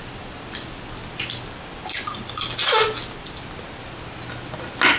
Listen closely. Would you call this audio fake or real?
real